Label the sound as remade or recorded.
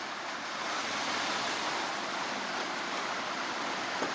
recorded